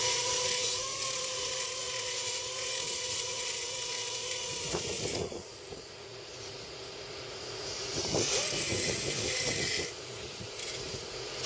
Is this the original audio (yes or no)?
no